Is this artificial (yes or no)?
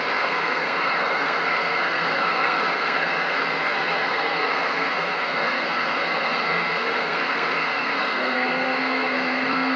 yes